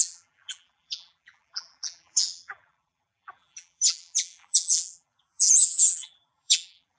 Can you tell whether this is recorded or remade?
remade